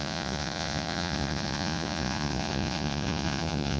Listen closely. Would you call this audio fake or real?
fake